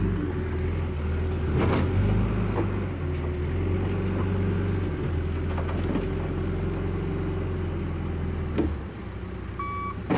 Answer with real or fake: real